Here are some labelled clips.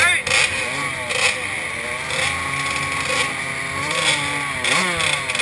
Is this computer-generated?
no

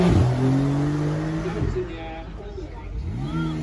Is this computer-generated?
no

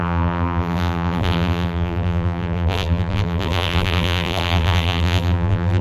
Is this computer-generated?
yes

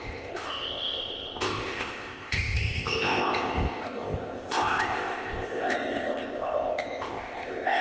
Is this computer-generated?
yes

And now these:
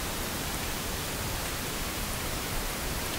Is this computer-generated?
yes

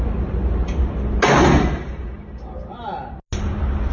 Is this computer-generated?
no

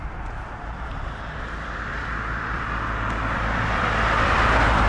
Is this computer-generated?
yes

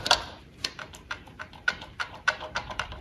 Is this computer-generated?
yes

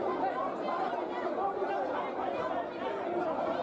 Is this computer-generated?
no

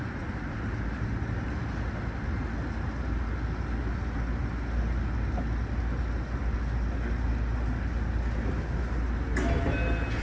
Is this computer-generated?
no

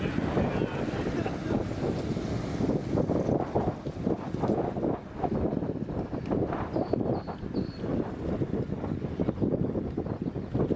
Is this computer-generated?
no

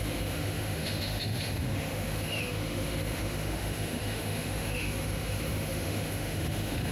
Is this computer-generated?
yes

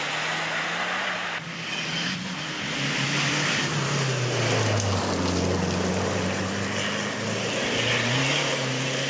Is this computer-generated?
no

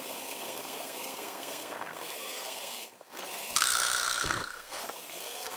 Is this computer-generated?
yes